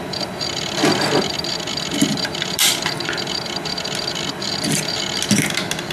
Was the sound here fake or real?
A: real